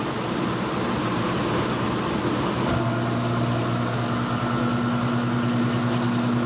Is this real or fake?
real